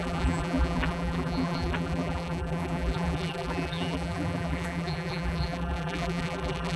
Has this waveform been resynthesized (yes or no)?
yes